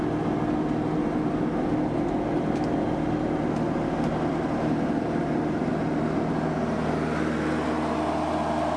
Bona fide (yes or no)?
yes